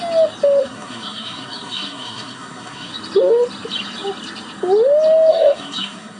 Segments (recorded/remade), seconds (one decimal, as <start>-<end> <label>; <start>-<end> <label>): 0.0-0.6 recorded; 0.6-2.9 remade; 2.9-5.3 recorded; 5.3-6.2 remade